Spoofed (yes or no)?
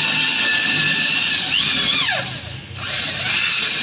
no